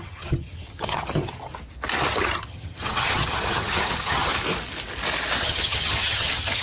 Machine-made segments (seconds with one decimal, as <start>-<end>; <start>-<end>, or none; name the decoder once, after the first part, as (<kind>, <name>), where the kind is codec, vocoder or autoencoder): 0.0-1.5 (vocoder, HiFi-GAN); 2.1-4.3; 5.4-6.6